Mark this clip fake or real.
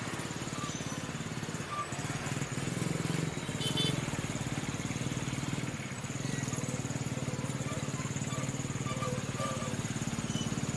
real